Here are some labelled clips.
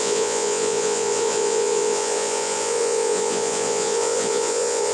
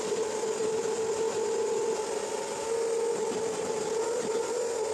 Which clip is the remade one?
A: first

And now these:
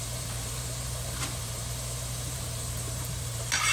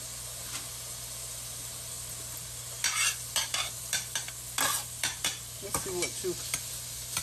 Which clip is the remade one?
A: first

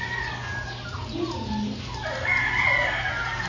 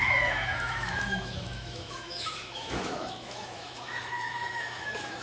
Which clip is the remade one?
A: second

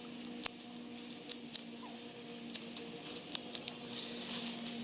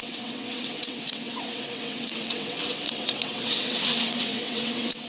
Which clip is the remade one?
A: second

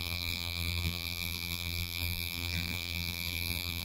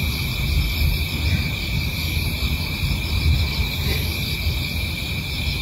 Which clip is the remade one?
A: first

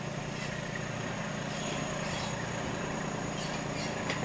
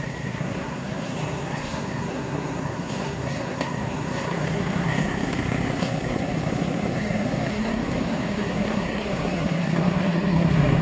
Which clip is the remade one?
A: second